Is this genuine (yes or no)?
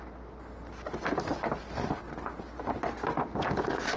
yes